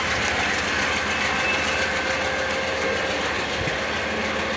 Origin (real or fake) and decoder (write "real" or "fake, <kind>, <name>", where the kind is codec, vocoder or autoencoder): real